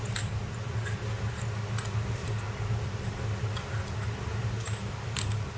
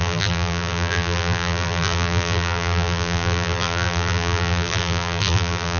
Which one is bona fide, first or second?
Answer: first